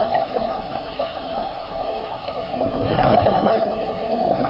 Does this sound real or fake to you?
fake